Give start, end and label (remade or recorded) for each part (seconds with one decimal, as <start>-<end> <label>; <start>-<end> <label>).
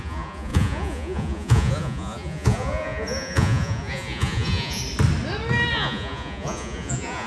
0.0-4.8 remade; 4.8-5.7 recorded; 5.7-7.3 remade